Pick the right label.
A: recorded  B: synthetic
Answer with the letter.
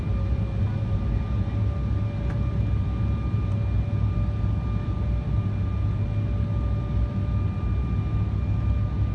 A